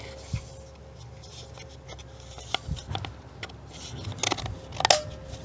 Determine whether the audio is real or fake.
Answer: real